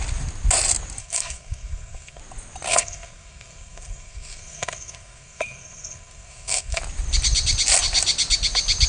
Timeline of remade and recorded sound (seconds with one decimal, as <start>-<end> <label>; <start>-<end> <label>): 0.0-1.0 recorded; 1.0-2.2 remade; 2.2-2.7 recorded; 2.7-6.8 remade; 6.8-8.9 recorded